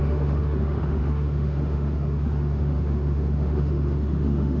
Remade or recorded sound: remade